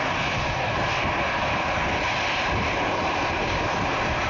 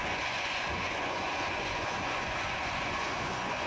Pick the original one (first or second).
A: first